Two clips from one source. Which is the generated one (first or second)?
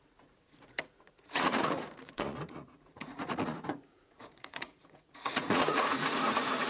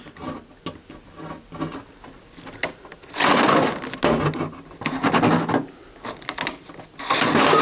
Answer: first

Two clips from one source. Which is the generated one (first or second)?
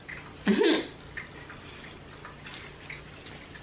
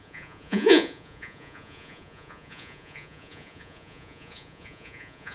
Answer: second